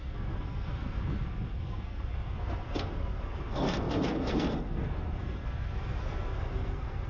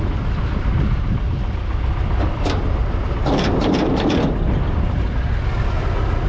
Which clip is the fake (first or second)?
first